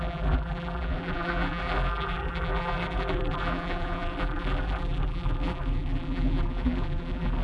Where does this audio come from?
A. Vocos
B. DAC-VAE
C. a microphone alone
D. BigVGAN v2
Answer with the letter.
D